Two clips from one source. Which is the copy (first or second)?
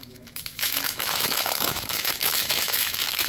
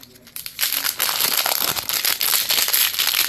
first